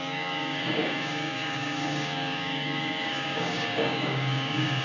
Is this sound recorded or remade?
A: remade